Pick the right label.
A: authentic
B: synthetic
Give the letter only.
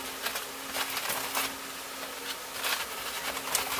A